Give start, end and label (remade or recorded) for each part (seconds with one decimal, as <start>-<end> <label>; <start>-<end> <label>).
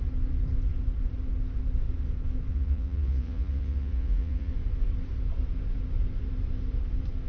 0.0-2.5 recorded; 2.5-4.5 remade; 4.5-7.3 recorded